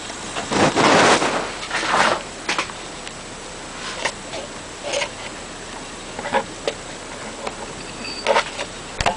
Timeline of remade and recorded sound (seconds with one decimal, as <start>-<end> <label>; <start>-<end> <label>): 0.0-9.2 recorded